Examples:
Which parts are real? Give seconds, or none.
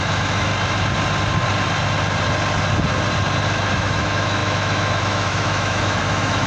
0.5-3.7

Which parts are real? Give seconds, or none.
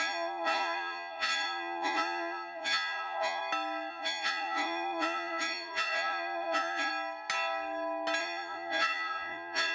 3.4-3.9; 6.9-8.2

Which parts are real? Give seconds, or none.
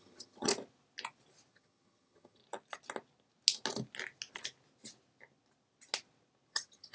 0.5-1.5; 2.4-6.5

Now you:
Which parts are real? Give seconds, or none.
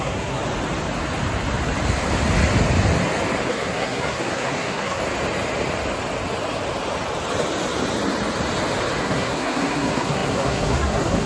0.4-3.5; 5.0-9.0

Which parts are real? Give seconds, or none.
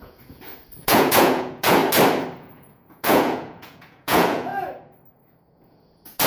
1.8-2.4; 4.5-5.1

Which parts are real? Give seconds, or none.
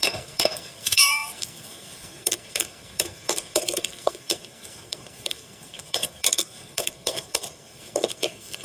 none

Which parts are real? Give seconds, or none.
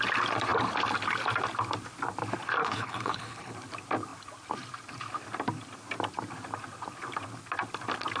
0.0-2.6; 3.5-8.2